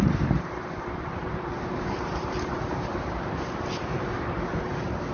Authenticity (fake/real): fake